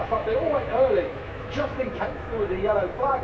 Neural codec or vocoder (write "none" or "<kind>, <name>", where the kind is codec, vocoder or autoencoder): autoencoder, DAC-VAE